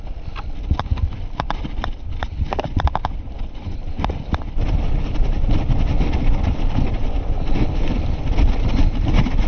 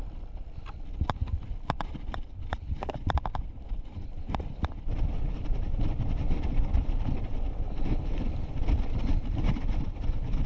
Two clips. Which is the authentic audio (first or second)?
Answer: first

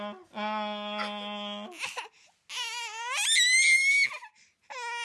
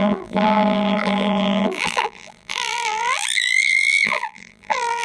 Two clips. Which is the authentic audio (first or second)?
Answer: first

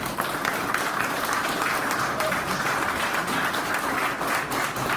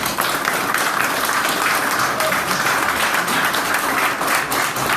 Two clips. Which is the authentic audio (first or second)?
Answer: second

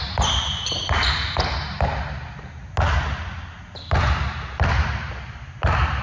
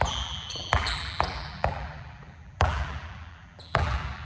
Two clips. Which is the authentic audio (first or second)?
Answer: first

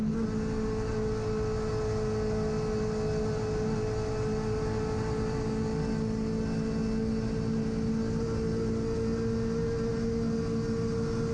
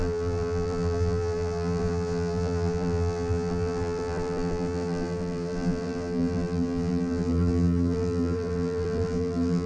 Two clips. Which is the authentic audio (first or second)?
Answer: first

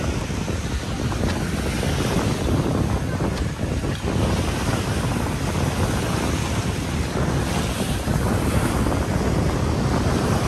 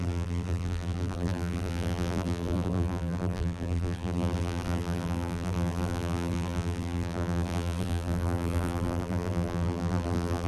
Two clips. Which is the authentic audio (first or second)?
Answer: first